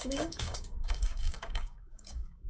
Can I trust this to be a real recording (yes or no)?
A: no